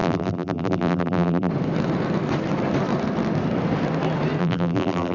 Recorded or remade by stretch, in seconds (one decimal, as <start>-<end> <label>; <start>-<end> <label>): 0.0-1.5 remade; 1.5-4.4 recorded; 4.4-5.1 remade